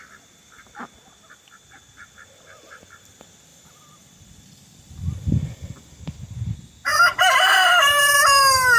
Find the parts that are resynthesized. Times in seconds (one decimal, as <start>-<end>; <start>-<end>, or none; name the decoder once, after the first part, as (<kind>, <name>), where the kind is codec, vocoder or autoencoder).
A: 3.5-6.0 (vocoder, BigVGAN v2)

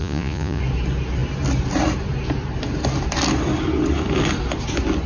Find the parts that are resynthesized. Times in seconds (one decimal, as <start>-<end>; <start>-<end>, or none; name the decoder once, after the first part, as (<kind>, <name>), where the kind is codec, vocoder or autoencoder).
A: 0.0-0.6 (vocoder, Vocos)

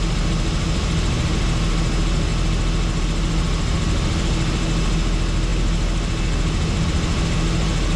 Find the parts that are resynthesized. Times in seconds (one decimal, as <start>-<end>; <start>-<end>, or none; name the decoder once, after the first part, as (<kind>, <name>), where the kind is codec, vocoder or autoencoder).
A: none

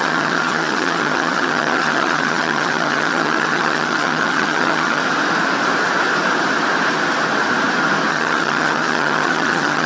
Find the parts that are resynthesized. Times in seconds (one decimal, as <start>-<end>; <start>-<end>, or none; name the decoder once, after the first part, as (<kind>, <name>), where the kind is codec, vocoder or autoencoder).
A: 0.0-5.0 (vocoder, HiFi-GAN); 8.1-9.9

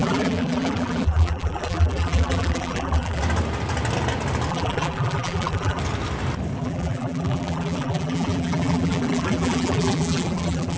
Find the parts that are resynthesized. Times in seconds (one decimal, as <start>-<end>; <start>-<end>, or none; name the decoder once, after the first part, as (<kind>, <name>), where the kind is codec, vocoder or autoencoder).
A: 0.0-3.2 (vocoder, BigVGAN v2); 4.5-5.8; 6.6-10.8